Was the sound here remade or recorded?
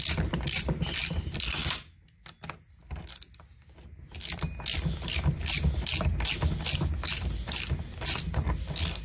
recorded